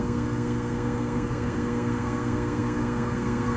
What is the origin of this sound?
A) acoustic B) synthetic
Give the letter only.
B